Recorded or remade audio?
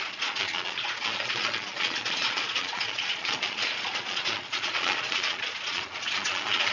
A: remade